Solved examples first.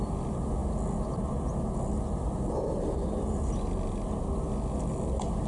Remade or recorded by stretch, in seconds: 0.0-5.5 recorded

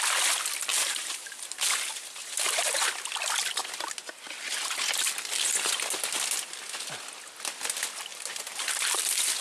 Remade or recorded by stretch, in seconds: 0.0-0.7 recorded; 0.7-1.6 remade; 1.6-2.2 recorded; 2.2-2.9 remade; 2.9-8.1 recorded; 8.1-9.0 remade; 9.0-9.4 recorded

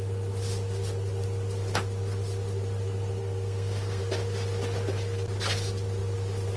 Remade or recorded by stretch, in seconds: 0.0-3.2 recorded; 3.2-4.0 remade; 4.0-6.6 recorded

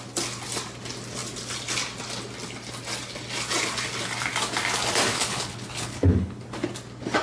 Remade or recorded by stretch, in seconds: 0.0-5.1 recorded; 5.1-6.4 remade; 6.4-7.2 recorded

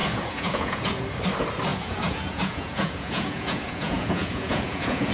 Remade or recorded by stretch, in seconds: 0.0-1.0 remade; 1.0-1.7 recorded; 1.7-5.1 remade

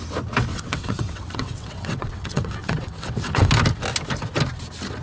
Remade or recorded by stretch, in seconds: 0.0-0.5 recorded; 0.5-3.5 remade; 3.5-5.0 recorded